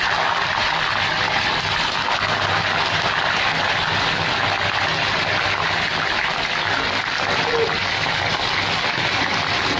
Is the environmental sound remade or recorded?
recorded